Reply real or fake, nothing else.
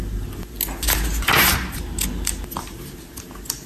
real